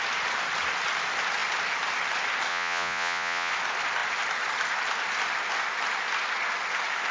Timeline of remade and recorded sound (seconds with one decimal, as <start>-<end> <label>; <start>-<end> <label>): 0.0-2.5 recorded; 2.5-3.5 remade; 3.5-7.1 recorded